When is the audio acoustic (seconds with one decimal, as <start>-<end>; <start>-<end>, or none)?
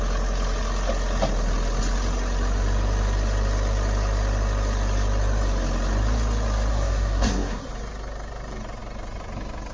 0.0-6.7; 7.6-9.7